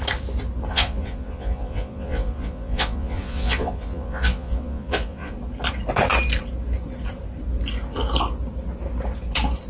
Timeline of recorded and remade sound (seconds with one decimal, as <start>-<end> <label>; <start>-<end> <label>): 0.0-0.7 recorded; 0.7-5.3 remade; 5.3-9.7 recorded